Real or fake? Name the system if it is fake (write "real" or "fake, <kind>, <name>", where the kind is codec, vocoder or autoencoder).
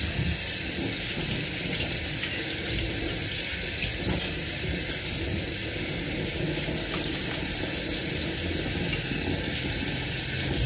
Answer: real